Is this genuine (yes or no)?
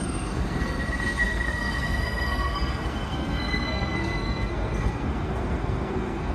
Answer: no